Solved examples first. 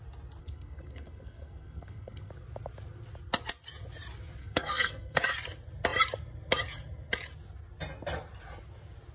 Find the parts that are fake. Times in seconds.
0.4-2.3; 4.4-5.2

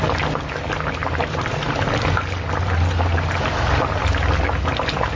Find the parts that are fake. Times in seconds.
none